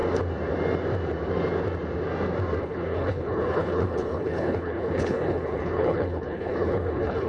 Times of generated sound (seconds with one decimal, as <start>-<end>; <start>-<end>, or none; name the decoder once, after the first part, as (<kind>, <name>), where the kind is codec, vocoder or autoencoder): 2.6-7.3 (codec, HILCodec)